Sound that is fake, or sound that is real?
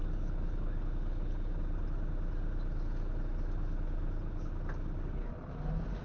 real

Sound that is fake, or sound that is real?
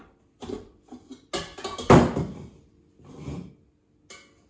real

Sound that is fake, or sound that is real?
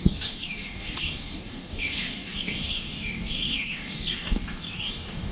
fake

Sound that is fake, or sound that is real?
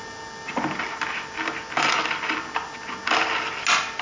real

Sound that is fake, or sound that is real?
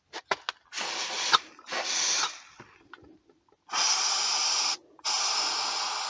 real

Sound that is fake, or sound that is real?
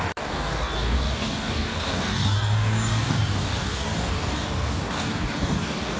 fake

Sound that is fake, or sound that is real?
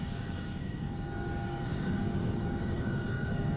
fake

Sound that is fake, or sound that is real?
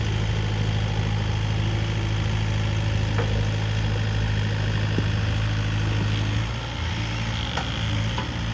real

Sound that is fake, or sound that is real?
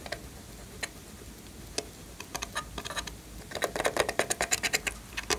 real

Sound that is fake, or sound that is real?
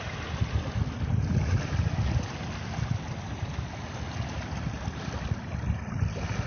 real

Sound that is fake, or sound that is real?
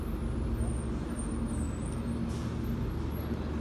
real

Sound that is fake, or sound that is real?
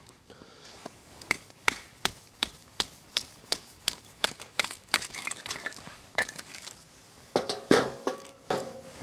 fake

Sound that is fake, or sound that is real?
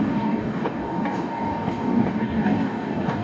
fake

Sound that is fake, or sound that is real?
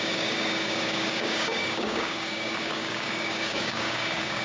fake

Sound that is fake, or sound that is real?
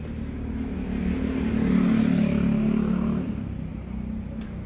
real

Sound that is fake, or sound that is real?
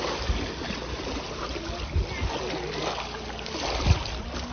real